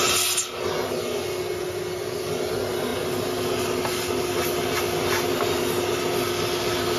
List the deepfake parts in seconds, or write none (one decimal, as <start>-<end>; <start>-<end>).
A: none